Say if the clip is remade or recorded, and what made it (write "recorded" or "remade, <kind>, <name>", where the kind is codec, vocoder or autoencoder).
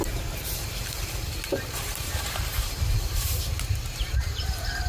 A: remade, vocoder, BigVGAN v2